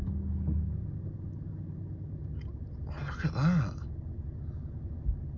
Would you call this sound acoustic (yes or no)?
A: yes